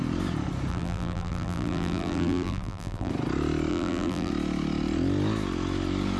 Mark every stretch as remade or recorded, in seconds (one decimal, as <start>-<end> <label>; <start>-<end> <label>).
0.0-0.7 recorded; 0.7-3.1 remade; 3.1-3.7 recorded; 3.7-4.3 remade; 4.3-6.2 recorded